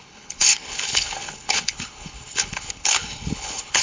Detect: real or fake fake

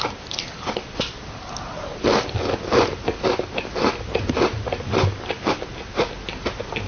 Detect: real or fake real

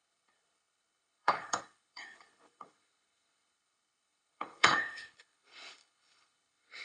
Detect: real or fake fake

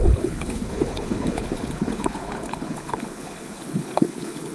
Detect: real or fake fake